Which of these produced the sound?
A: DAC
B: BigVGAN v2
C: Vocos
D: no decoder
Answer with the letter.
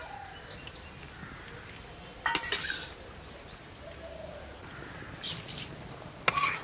D